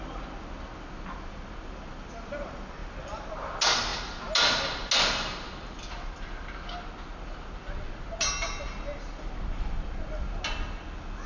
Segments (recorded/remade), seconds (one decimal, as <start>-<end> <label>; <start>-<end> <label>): 0.0-11.3 recorded